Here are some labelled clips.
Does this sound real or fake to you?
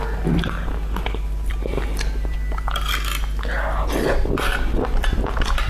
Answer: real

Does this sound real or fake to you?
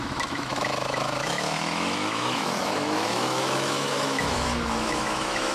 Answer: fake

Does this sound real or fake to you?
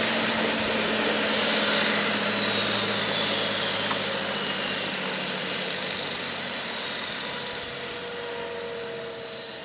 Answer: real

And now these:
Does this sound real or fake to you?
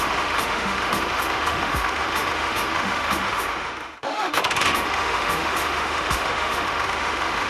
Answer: fake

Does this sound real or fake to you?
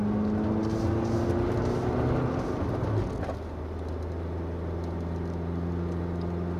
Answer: real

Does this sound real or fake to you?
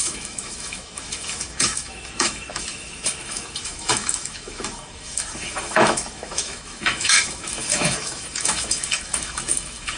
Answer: fake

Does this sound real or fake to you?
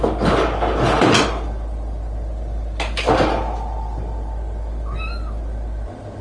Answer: real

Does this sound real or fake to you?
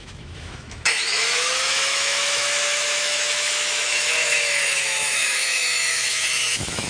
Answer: fake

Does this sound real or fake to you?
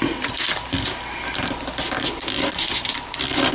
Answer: real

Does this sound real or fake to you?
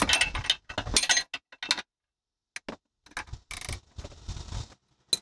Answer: real